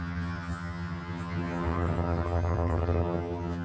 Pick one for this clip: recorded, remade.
remade